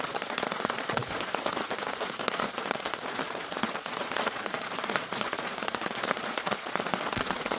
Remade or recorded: remade